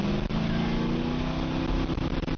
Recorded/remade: recorded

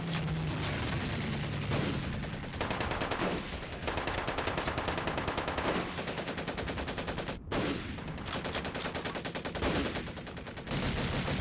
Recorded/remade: recorded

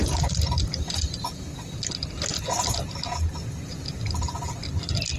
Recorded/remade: recorded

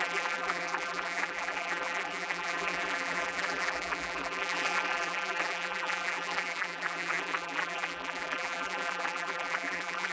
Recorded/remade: remade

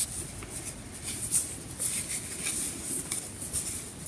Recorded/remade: recorded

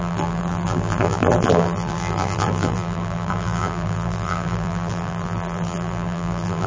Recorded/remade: remade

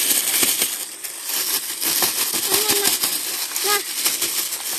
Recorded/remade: recorded